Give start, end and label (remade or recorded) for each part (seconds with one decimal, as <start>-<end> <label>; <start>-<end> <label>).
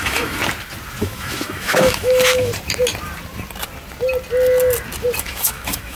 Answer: 0.0-0.4 remade; 0.4-1.0 recorded; 1.0-2.5 remade; 2.5-5.2 recorded; 5.2-5.9 remade